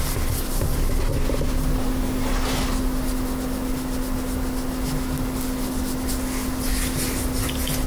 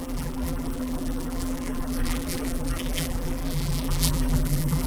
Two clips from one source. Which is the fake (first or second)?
second